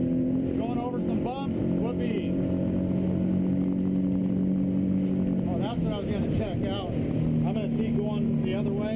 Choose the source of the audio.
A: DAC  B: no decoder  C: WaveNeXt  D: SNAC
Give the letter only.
B